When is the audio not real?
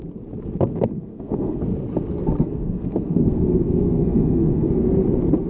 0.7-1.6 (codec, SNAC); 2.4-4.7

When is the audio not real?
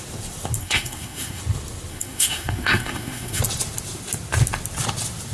0.6-1.4 (codec, SNAC); 1.9-3.4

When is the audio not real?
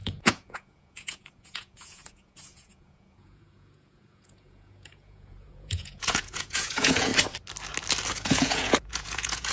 0.0-7.1 (vocoder, Vocos); 8.1-9.5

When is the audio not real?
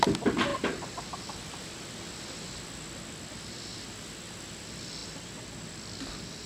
none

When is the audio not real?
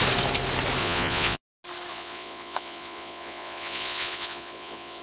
0.8-1.4 (vocoder, Vocos); 1.9-5.0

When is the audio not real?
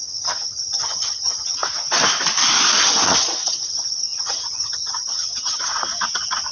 0.0-1.6 (vocoder, HiFi-GAN); 2.8-5.6